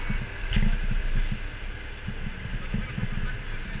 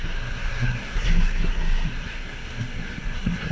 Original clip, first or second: first